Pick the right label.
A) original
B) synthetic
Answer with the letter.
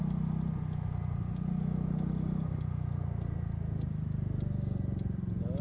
A